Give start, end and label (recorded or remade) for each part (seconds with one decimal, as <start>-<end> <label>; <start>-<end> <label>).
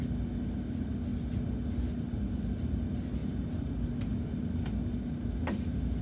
0.0-6.0 recorded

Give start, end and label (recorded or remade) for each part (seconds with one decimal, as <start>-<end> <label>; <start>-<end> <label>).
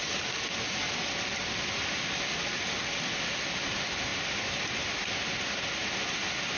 0.0-4.1 recorded; 4.1-6.0 remade; 6.0-6.6 recorded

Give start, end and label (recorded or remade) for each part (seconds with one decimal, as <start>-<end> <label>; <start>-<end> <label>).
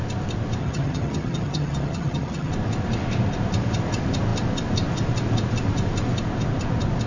0.0-0.6 recorded; 0.6-2.5 remade; 2.5-7.1 recorded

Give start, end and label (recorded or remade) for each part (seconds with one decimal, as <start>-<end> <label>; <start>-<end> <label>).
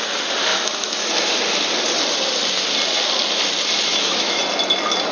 0.0-0.5 recorded; 0.5-1.1 remade; 1.1-3.9 recorded; 3.9-4.4 remade; 4.4-5.1 recorded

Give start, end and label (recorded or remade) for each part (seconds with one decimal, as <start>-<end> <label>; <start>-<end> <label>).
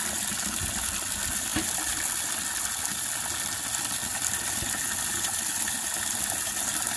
0.0-4.1 recorded; 4.1-7.0 remade